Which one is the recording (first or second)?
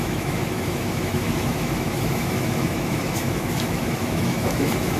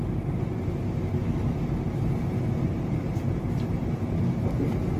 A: second